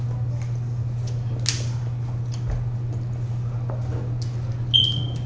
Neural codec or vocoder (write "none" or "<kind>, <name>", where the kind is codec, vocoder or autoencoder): none